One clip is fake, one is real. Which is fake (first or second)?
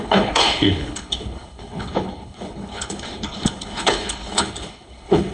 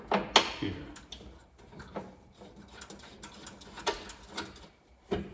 first